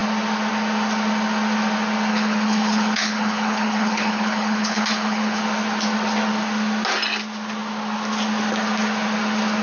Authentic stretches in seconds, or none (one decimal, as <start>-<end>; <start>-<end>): 0.0-2.1; 5.4-9.6